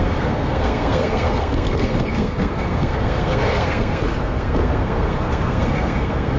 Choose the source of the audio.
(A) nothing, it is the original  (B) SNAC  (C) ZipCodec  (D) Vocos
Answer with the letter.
B